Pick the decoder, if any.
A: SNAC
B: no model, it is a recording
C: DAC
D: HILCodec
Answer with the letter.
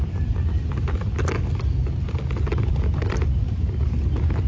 B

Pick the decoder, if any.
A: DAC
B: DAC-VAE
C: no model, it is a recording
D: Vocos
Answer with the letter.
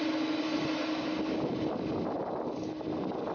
C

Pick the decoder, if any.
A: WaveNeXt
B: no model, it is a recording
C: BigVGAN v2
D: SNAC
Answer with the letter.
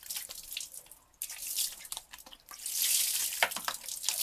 B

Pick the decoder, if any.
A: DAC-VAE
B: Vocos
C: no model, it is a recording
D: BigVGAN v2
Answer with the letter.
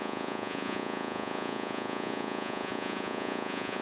B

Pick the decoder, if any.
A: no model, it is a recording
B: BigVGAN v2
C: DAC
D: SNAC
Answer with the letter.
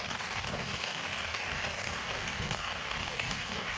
C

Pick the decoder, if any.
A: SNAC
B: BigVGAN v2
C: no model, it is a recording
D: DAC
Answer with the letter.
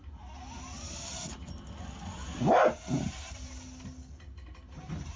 C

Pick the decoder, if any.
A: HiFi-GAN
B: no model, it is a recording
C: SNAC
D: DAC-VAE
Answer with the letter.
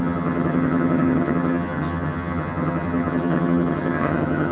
A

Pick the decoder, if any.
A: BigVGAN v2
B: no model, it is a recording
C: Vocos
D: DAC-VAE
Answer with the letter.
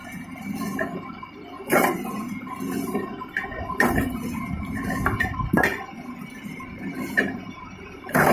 A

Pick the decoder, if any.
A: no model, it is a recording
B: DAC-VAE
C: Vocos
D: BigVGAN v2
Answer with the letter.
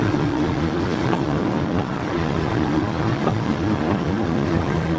C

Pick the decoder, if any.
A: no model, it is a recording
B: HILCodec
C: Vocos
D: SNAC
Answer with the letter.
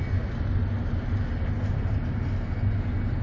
A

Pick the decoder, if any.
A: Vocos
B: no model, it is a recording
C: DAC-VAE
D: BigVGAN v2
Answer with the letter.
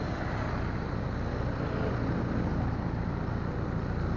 B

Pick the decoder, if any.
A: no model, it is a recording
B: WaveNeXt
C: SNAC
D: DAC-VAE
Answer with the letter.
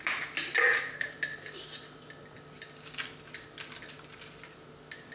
A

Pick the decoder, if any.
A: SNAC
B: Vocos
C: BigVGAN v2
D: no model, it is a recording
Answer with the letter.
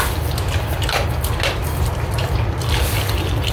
D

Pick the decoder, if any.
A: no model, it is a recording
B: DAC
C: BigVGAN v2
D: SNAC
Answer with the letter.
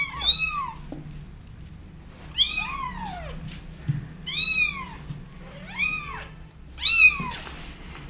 A